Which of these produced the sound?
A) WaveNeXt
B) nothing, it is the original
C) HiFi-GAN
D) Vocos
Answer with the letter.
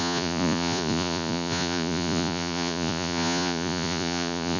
D